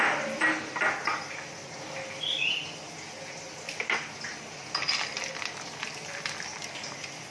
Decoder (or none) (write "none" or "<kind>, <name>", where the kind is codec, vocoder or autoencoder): none